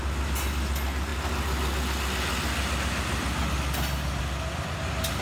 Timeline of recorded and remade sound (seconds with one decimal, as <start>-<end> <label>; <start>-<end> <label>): 0.0-5.2 recorded